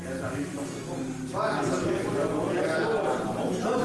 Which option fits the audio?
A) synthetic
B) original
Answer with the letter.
B